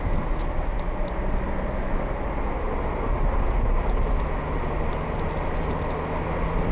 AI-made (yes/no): no